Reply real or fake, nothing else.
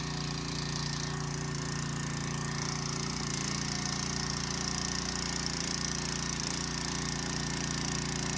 real